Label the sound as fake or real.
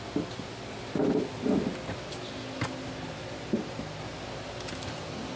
real